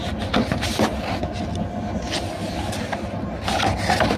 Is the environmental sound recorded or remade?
recorded